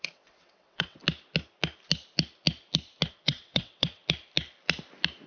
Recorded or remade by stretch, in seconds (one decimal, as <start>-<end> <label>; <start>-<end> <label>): 0.0-1.0 remade; 1.0-3.1 recorded; 3.1-4.0 remade; 4.0-5.3 recorded